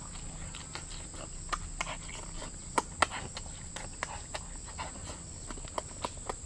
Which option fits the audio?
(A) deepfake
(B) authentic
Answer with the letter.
B